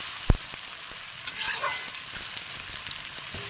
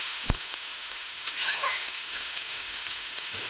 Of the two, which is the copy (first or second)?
second